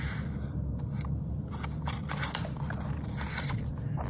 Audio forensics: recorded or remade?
recorded